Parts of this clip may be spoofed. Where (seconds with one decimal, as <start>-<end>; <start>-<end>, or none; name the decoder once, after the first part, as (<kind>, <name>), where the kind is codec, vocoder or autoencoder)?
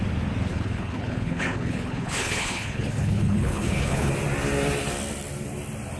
0.5-4.1 (codec, HILCodec)